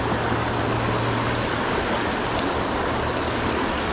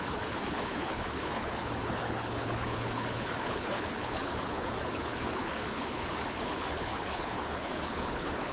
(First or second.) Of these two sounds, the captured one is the first